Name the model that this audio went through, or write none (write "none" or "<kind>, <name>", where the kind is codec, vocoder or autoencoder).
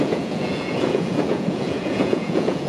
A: vocoder, Vocos